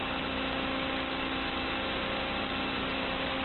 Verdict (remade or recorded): remade